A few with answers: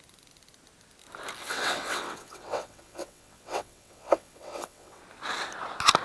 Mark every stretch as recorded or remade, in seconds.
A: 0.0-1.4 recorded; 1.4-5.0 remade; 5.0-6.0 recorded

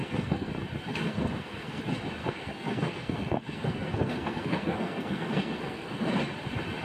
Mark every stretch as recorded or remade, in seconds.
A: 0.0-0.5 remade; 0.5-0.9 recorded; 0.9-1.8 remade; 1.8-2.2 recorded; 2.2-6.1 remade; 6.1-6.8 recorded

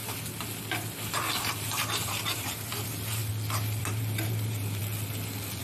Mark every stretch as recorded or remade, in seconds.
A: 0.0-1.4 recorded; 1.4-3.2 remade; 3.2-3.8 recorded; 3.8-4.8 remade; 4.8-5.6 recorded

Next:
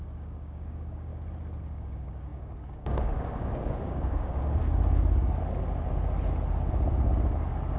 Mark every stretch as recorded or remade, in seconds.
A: 0.0-1.1 remade; 1.1-1.6 recorded; 1.6-4.6 remade; 4.6-6.9 recorded; 6.9-7.8 remade

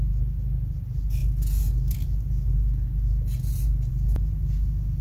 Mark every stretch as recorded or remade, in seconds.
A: 0.0-5.0 recorded